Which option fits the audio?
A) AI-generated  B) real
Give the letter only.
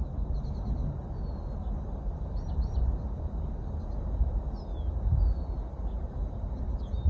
B